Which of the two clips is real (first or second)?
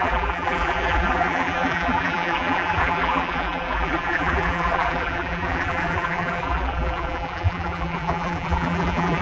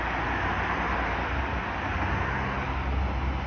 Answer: second